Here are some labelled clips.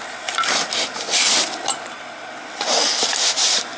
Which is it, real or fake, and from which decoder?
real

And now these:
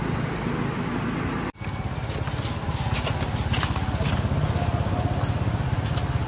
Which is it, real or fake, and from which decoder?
real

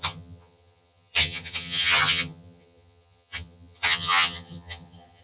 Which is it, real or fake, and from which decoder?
fake, vocoder, HiFi-GAN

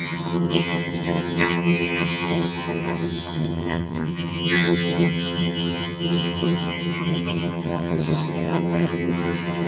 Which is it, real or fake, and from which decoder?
fake, vocoder, HiFi-GAN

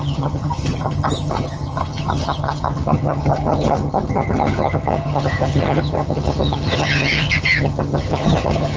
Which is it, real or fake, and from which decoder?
fake, vocoder, HiFi-GAN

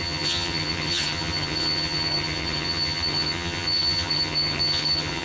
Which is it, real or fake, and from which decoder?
fake, vocoder, HiFi-GAN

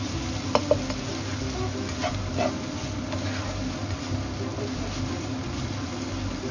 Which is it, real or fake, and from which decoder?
real